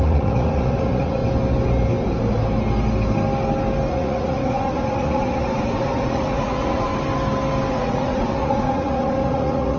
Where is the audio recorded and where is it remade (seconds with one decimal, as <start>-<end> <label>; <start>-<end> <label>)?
0.0-1.2 remade; 1.2-3.9 recorded; 3.9-6.9 remade; 6.9-7.7 recorded; 7.7-9.8 remade